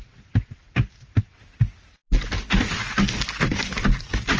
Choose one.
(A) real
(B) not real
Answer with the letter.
A